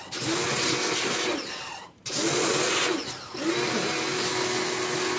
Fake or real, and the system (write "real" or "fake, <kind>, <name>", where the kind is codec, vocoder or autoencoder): real